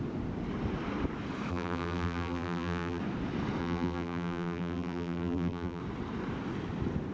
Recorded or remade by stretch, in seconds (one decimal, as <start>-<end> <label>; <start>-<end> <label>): 0.0-1.5 recorded; 1.5-3.0 remade; 3.0-3.6 recorded; 3.6-5.8 remade; 5.8-7.1 recorded